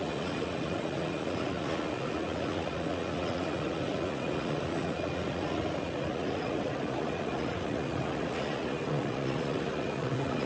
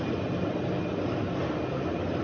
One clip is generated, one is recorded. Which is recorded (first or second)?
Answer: second